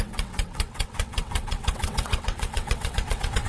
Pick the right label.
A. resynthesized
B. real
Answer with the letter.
A